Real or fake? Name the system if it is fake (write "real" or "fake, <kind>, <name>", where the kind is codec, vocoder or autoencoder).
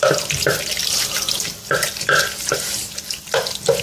fake, vocoder, BigVGAN v2